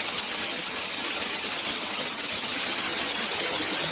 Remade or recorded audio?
remade